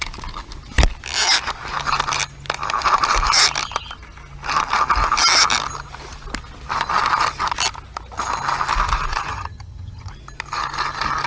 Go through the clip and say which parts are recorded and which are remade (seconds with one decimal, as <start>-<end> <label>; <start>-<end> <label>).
0.0-9.3 recorded; 9.3-10.1 remade; 10.1-11.3 recorded

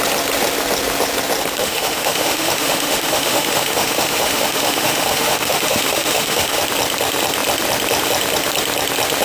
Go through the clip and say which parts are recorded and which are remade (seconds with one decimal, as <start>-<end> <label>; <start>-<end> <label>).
0.0-1.6 recorded; 1.6-6.6 remade; 6.6-9.2 recorded